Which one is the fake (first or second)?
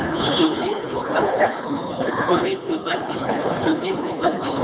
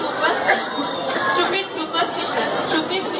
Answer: first